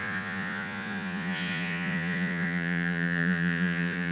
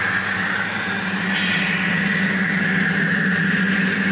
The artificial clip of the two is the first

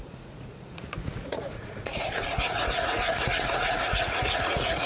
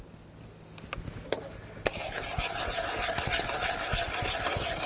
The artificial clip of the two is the first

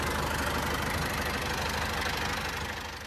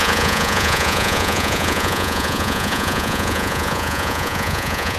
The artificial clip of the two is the second